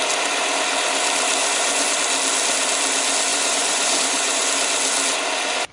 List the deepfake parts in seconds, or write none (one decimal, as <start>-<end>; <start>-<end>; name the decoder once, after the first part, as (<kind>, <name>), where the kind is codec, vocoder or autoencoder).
1.4-2.0 (vocoder, Vocos); 3.3-4.5